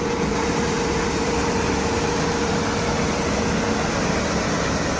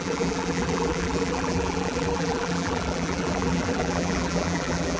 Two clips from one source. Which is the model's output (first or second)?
second